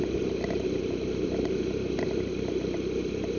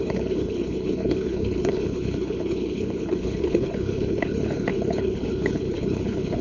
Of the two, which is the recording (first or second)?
first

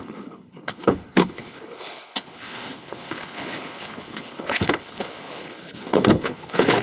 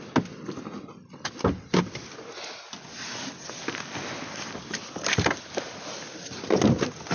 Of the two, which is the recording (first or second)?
second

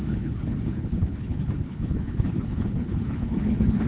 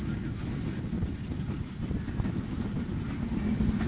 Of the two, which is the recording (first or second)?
second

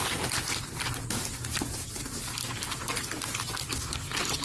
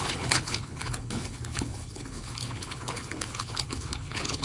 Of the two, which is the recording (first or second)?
first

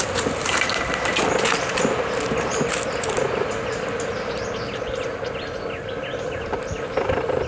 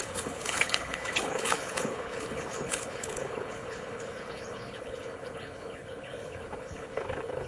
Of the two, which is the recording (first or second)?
first